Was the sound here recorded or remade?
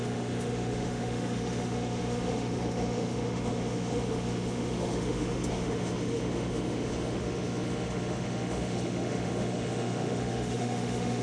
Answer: remade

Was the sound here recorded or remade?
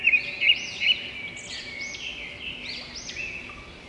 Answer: recorded